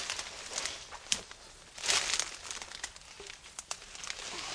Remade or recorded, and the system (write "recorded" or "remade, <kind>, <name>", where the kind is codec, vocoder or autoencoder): recorded